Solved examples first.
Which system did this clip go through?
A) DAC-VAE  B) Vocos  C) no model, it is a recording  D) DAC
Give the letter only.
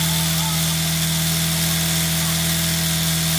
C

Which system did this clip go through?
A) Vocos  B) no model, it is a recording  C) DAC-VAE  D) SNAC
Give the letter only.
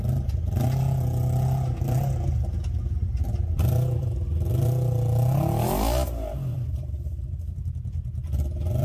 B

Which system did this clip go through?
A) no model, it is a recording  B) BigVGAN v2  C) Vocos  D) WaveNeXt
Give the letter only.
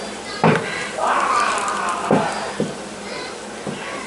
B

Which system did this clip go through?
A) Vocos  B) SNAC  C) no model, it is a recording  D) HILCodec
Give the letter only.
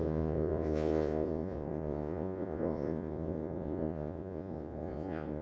A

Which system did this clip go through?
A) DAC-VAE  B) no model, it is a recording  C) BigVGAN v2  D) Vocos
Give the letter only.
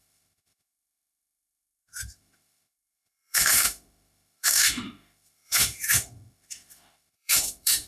A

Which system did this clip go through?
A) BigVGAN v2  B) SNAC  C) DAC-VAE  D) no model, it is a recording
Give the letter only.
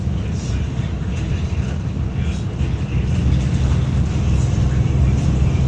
D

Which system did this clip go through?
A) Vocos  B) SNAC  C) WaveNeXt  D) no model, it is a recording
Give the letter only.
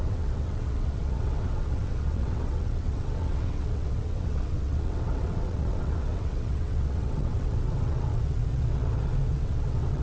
C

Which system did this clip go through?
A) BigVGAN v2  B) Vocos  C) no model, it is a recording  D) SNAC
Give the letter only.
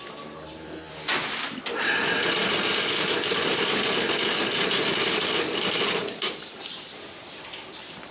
A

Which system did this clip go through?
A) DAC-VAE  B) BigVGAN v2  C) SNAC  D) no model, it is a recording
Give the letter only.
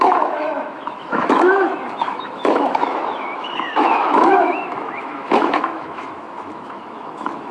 A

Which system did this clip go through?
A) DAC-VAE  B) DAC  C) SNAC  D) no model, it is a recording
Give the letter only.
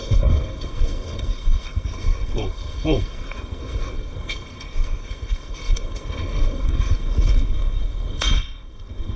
C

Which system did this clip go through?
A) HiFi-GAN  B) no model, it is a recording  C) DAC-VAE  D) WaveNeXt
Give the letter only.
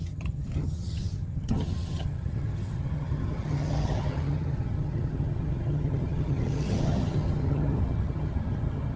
A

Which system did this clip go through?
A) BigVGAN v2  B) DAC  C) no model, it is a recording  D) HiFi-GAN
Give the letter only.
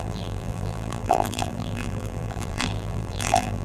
A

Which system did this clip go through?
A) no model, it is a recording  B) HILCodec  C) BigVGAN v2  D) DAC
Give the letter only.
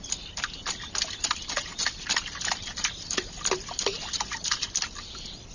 A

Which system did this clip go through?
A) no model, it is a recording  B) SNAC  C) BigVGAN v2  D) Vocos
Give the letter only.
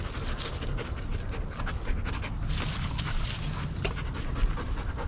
A